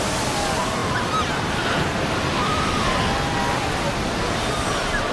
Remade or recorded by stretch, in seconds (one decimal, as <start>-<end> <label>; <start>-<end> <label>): 0.0-5.1 recorded